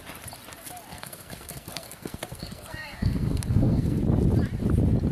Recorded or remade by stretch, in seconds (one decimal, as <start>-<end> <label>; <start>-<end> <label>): 0.0-0.9 recorded; 0.9-4.0 remade; 4.0-5.1 recorded